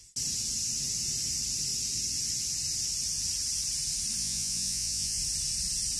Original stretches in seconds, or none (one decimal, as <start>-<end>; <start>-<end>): 0.0-4.2; 5.2-6.0